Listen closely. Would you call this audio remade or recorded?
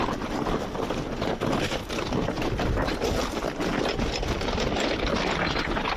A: recorded